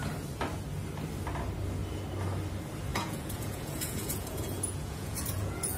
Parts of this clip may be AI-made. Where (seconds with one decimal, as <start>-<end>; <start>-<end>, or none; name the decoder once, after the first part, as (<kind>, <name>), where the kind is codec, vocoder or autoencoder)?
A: 2.9-5.8 (vocoder, Vocos)